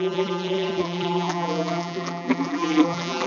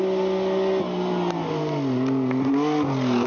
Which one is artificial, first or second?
first